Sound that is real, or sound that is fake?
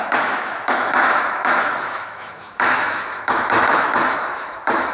fake